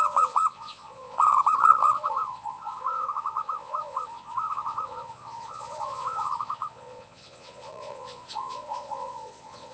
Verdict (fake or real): fake